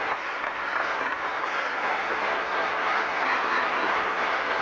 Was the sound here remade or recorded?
remade